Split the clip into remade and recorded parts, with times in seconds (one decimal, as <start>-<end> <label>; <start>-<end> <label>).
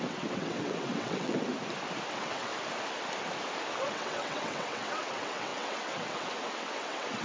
0.0-1.5 remade; 1.5-2.1 recorded; 2.1-2.5 remade; 2.5-3.8 recorded; 3.8-7.2 remade